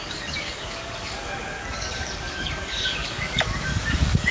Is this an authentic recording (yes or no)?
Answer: no